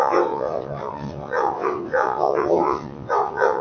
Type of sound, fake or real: fake